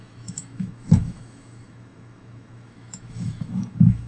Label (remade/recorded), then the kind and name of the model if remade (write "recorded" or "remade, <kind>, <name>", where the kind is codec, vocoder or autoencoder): remade, autoencoder, DAC-VAE